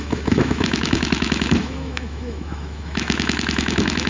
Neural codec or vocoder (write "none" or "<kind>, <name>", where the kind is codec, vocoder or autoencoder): autoencoder, DAC-VAE